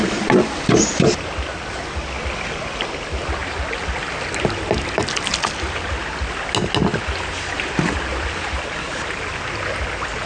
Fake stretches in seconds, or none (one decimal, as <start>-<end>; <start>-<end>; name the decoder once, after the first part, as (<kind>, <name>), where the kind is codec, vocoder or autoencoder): none